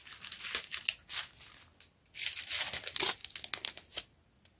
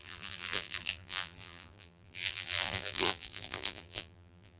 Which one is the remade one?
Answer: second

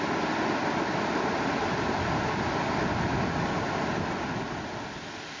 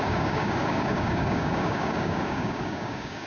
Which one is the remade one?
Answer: second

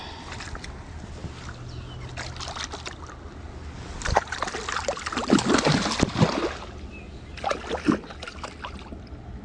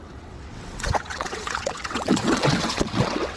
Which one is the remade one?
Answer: second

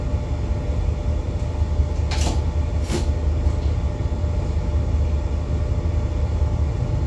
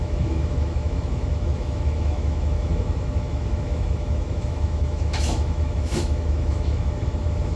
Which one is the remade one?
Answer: second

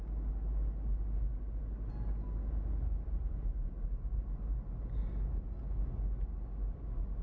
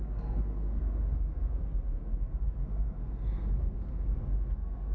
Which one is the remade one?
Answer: second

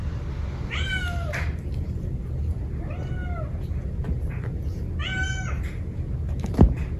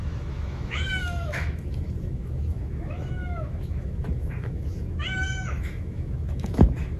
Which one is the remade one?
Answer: second